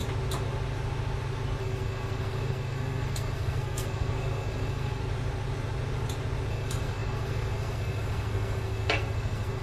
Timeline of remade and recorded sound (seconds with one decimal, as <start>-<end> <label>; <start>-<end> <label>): 0.0-1.6 recorded; 1.6-5.0 remade; 5.0-6.5 recorded; 6.5-9.6 remade